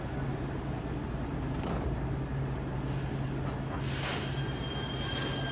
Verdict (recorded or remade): recorded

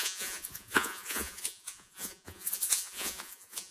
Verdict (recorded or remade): remade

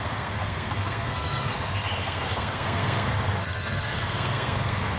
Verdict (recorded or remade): remade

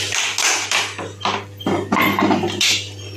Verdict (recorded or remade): recorded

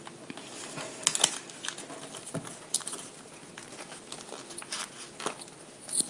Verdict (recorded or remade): recorded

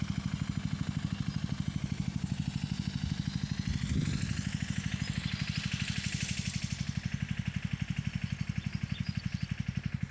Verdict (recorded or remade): recorded